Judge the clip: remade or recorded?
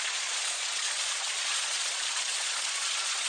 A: remade